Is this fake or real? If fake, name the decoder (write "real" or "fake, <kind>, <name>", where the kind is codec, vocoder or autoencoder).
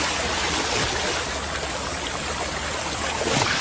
real